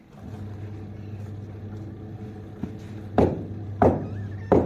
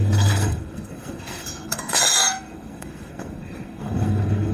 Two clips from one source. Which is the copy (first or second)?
second